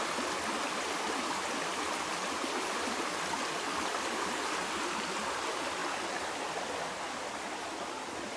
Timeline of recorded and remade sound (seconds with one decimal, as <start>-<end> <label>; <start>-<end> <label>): 0.0-8.4 recorded